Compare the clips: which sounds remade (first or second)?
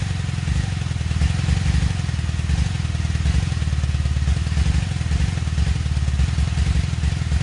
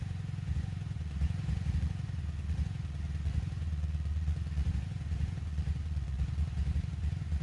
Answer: second